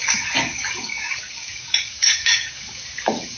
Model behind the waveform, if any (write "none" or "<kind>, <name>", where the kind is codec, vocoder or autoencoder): codec, DAC